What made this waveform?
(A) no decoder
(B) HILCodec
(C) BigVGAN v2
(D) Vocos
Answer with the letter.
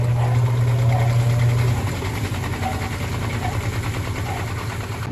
A